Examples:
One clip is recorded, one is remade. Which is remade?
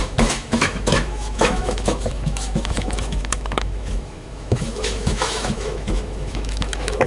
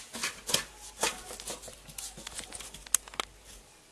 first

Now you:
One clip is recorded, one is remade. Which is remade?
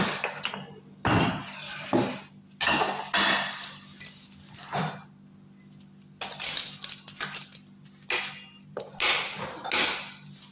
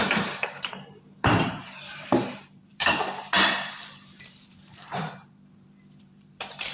second